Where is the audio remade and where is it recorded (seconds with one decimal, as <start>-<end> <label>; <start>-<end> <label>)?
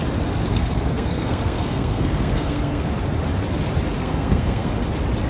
0.0-0.5 recorded; 0.5-2.9 remade; 2.9-4.0 recorded; 4.0-4.7 remade; 4.7-5.3 recorded